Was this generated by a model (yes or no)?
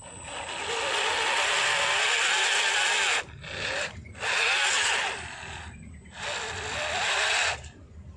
no